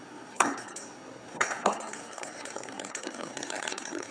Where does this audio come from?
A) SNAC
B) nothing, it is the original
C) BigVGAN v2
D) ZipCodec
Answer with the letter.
A